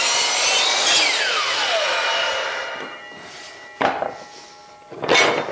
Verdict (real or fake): real